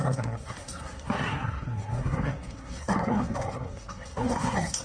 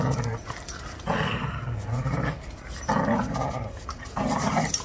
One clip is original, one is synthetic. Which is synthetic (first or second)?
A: first